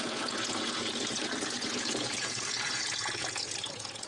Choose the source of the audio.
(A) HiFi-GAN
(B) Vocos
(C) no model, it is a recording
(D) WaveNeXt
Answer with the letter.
B